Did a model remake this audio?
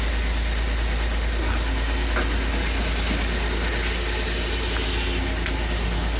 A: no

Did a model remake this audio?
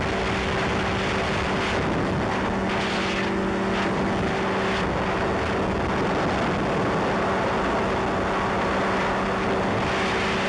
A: no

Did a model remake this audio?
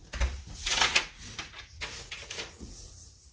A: yes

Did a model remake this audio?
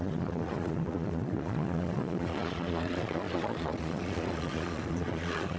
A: yes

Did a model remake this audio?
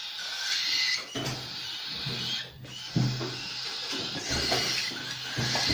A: no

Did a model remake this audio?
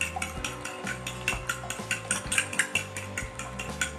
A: no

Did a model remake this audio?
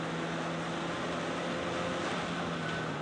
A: no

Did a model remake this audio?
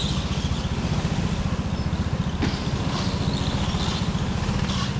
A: no